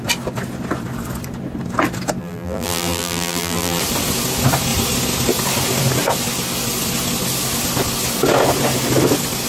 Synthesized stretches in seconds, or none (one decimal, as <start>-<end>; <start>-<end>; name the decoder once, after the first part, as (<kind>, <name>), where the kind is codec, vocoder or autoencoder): 2.2-3.8 (vocoder, BigVGAN v2)